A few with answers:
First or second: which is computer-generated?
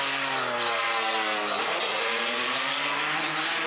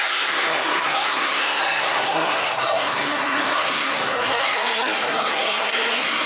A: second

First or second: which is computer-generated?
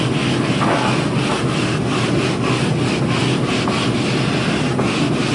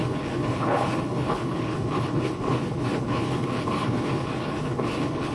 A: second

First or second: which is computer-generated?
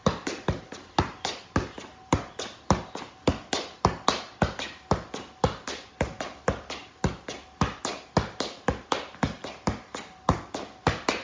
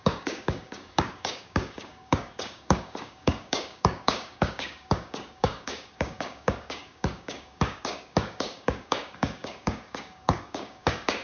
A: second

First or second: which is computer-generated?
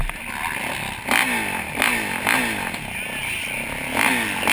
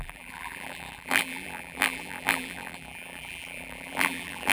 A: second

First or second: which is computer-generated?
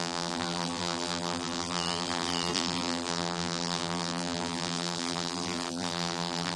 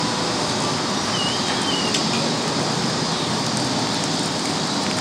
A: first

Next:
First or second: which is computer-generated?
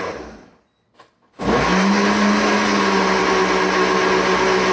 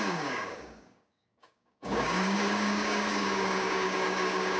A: second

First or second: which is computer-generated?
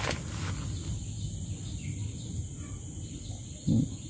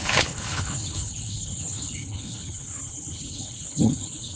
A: second